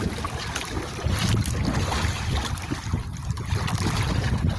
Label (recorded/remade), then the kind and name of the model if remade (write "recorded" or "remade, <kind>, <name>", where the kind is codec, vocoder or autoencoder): recorded